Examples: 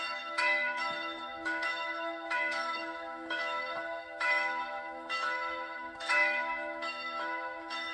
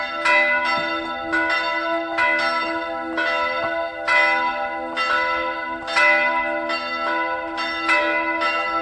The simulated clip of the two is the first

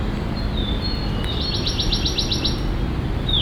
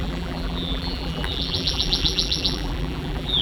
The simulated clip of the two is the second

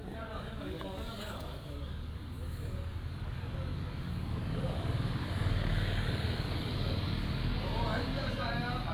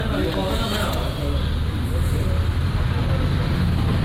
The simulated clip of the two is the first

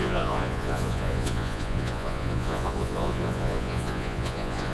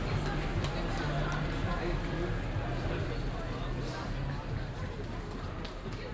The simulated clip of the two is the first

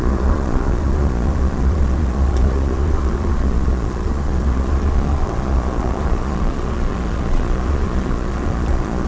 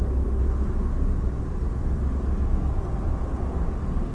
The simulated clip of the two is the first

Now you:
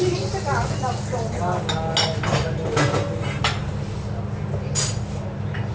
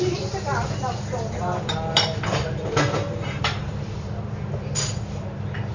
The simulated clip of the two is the second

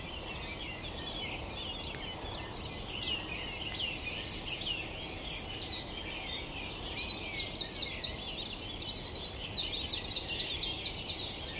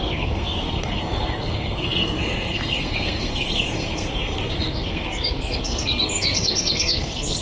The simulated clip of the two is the second